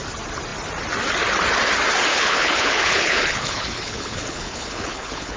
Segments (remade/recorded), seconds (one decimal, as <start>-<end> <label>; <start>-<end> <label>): 0.0-2.1 recorded; 2.1-5.4 remade